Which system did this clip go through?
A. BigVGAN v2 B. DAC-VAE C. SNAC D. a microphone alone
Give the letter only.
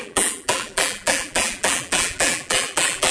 A